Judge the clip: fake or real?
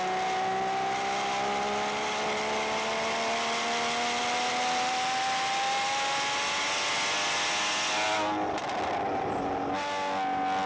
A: real